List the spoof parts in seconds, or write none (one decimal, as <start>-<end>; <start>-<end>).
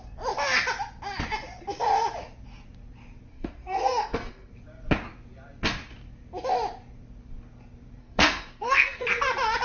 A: 3.3-4.5; 8.0-9.0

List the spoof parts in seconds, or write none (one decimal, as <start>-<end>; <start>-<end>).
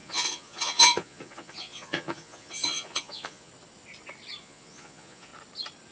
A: 0.0-3.5; 4.4-5.3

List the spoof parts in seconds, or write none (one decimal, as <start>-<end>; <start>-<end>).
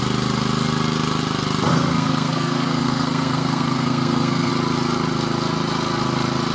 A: 1.7-4.5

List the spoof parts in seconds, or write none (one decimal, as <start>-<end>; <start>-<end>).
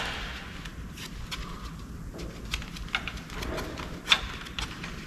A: none